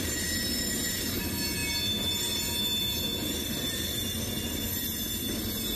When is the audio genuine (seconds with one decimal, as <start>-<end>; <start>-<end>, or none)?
0.0-5.8